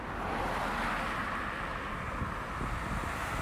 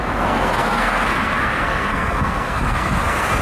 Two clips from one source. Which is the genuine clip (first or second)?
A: first